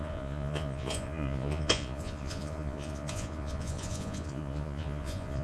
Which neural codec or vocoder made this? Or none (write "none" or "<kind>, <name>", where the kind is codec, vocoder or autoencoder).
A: vocoder, Vocos